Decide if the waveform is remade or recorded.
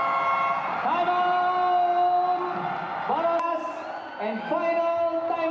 recorded